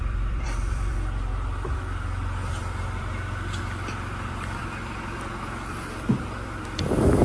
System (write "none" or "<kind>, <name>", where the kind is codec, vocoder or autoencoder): vocoder, BigVGAN v2